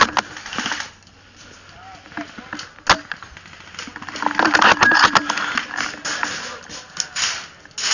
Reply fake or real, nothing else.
real